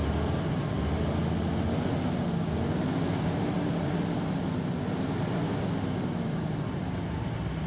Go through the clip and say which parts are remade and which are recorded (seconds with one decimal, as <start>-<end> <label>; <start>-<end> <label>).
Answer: 0.0-7.7 recorded